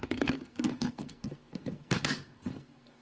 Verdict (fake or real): fake